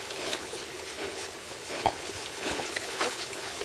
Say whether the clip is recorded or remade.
remade